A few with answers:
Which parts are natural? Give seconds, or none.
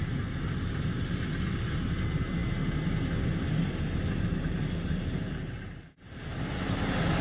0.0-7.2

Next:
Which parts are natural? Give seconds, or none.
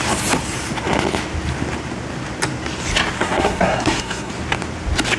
0.0-3.2; 4.3-5.2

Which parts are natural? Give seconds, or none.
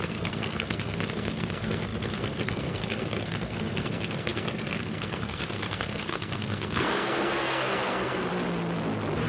8.3-9.3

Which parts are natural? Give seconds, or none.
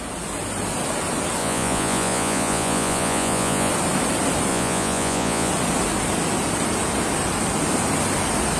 0.0-1.4; 3.7-4.5; 5.5-8.6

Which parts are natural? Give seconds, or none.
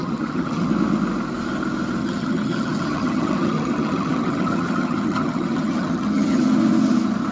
0.7-2.0; 6.4-7.3